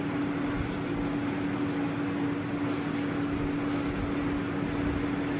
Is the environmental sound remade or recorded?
recorded